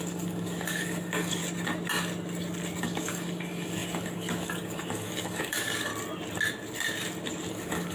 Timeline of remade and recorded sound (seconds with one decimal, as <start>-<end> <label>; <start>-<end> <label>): 0.0-1.4 remade; 1.4-2.8 recorded; 2.8-5.9 remade; 5.9-7.5 recorded; 7.5-7.9 remade